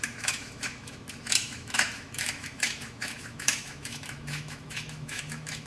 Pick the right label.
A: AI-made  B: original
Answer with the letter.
A